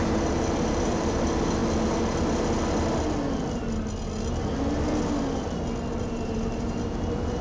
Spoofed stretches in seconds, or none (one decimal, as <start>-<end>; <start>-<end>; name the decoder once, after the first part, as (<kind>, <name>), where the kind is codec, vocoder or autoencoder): 0.0-1.6 (vocoder, BigVGAN v2); 6.0-7.4